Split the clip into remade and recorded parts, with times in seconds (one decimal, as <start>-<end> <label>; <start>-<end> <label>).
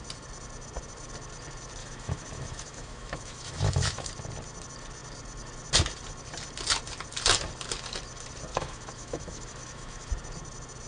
0.0-1.8 recorded; 1.8-4.1 remade; 4.1-8.5 recorded; 8.5-10.1 remade; 10.1-10.9 recorded